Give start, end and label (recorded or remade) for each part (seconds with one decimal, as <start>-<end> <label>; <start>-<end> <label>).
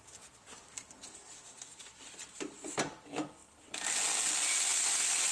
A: 0.0-5.3 recorded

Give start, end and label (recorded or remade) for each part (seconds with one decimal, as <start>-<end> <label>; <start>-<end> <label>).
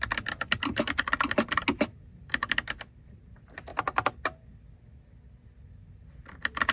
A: 0.0-6.7 recorded